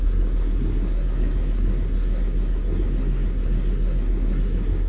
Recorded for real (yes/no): no